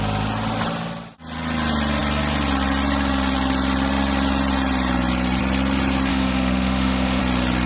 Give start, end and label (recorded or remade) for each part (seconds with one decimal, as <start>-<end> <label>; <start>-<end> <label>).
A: 0.0-6.1 recorded; 6.1-7.2 remade; 7.2-7.7 recorded